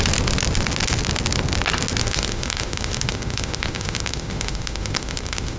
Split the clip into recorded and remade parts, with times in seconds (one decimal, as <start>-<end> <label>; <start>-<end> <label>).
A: 0.0-2.0 recorded; 2.0-5.6 remade